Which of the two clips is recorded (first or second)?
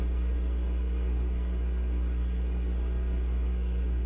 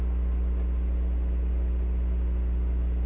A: second